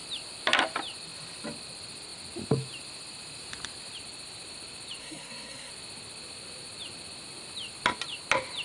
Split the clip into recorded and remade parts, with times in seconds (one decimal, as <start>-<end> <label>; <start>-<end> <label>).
0.0-5.0 recorded; 5.0-5.7 remade; 5.7-8.6 recorded